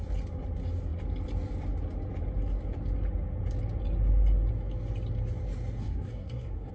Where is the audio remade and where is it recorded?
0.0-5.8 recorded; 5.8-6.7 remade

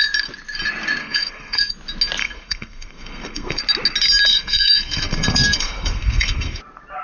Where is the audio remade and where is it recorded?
0.0-1.0 recorded; 1.0-1.7 remade; 1.7-2.2 recorded; 2.2-3.6 remade; 3.6-4.3 recorded; 4.3-6.6 remade; 6.6-7.0 recorded

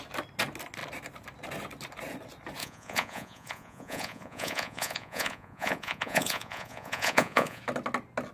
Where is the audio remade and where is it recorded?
0.0-2.6 recorded; 2.6-7.6 remade; 7.6-8.3 recorded

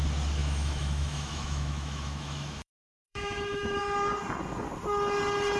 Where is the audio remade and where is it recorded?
0.0-0.4 recorded; 0.4-3.8 remade; 3.8-5.6 recorded